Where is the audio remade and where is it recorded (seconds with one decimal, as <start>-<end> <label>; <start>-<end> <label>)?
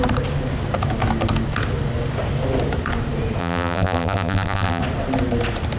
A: 0.0-3.4 recorded; 3.4-4.8 remade; 4.8-5.8 recorded